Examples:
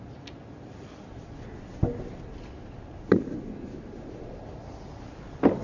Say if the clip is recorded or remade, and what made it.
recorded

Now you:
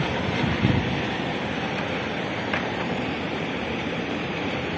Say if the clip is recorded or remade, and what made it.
remade, vocoder, BigVGAN v2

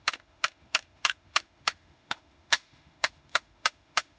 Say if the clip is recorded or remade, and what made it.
remade, autoencoder, DAC-VAE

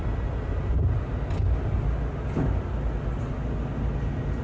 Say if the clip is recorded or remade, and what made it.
recorded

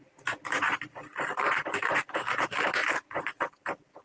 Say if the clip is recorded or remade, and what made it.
recorded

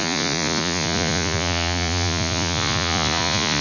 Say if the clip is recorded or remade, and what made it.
remade, vocoder, Vocos